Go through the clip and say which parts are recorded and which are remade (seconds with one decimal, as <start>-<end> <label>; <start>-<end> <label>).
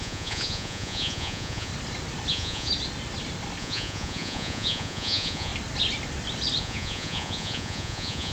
0.0-1.7 remade; 1.7-2.3 recorded; 2.3-2.7 remade; 2.7-3.6 recorded; 3.6-5.5 remade; 5.5-6.6 recorded; 6.6-8.3 remade